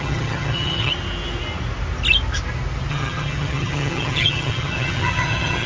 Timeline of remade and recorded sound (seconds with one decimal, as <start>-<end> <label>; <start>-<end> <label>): 0.0-0.9 remade; 0.9-2.9 recorded; 2.9-5.7 remade